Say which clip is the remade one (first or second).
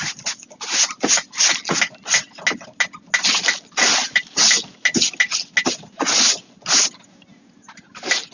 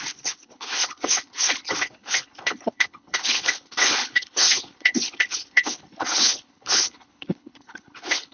second